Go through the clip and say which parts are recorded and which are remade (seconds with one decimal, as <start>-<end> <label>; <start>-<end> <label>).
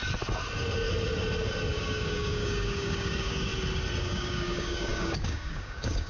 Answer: 0.0-1.7 recorded; 1.7-3.5 remade; 3.5-4.0 recorded; 4.0-6.1 remade